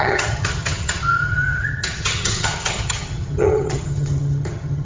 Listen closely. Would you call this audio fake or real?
fake